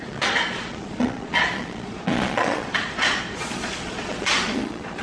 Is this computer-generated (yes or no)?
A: yes